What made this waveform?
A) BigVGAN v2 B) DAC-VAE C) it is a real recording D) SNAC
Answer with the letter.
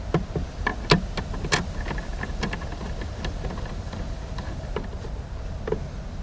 C